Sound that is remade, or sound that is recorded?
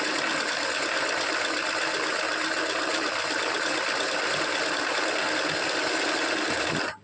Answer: recorded